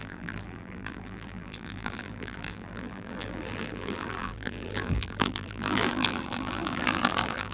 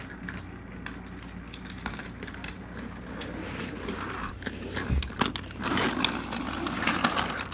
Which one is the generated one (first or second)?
first